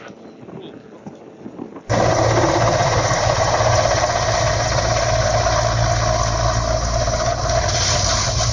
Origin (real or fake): real